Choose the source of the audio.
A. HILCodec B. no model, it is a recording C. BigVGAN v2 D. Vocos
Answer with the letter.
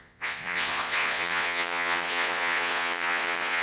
D